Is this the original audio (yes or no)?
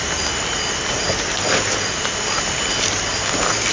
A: yes